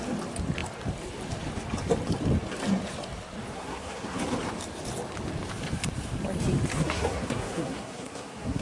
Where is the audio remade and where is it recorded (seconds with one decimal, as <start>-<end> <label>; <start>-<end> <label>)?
0.0-3.5 recorded; 3.5-4.2 remade; 4.2-6.7 recorded; 6.7-8.6 remade